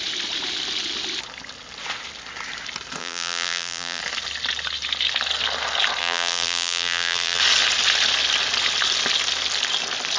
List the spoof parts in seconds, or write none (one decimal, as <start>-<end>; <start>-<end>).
3.0-4.0; 6.0-7.4